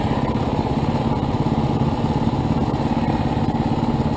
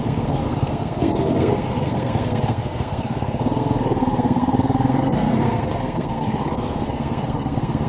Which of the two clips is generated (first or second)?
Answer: second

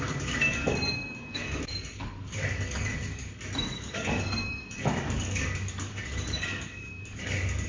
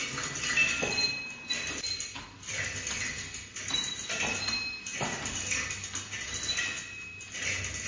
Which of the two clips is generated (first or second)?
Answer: first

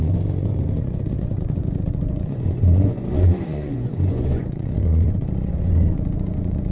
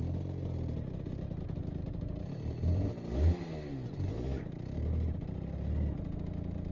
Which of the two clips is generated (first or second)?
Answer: first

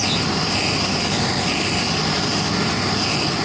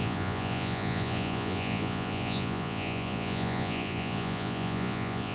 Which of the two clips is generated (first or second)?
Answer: second